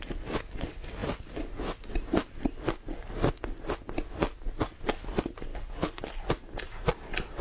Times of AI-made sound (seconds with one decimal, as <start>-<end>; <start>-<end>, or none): 5.5-6.0